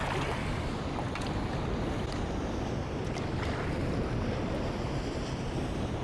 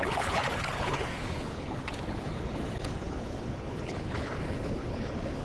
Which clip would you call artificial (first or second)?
second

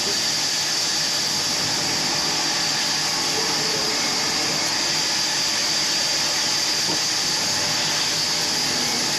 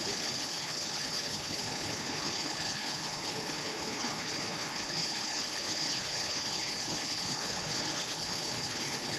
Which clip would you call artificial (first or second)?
second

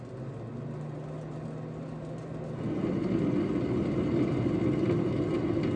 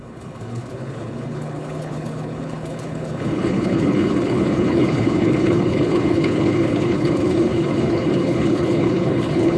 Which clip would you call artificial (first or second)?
second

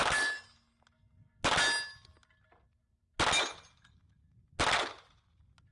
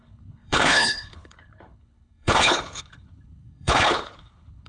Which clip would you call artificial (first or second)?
second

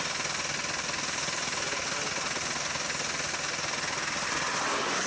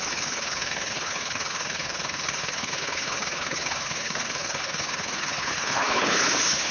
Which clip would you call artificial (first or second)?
second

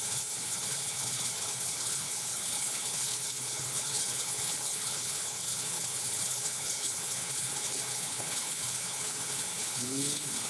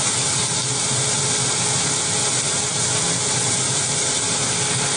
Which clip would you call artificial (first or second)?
first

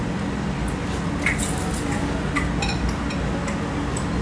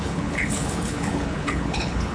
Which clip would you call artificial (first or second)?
second